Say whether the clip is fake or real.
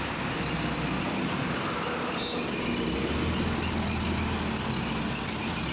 real